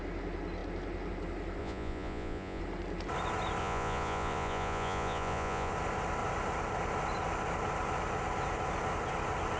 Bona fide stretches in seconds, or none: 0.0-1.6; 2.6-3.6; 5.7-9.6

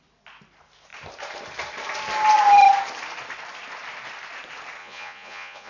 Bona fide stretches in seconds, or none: 0.0-4.8